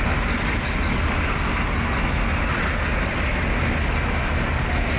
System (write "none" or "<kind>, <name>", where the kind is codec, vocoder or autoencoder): none